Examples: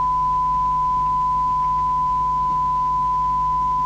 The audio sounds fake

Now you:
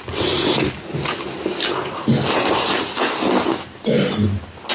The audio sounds real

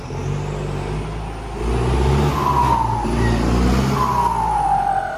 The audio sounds real